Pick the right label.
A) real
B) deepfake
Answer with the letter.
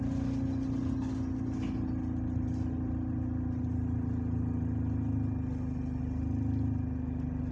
A